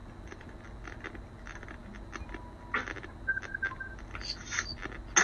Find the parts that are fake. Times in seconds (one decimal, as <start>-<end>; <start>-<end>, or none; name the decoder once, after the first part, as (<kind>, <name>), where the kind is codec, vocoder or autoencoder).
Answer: none